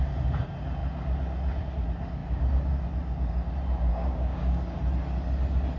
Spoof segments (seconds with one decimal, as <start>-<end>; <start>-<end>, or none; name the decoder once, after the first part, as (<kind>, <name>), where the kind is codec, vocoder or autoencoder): 3.9-4.8 (codec, DAC)